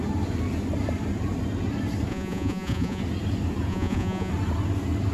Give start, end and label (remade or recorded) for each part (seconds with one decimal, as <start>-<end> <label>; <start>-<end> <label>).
0.0-2.1 recorded; 2.1-3.0 remade; 3.0-3.7 recorded; 3.7-4.3 remade; 4.3-5.1 recorded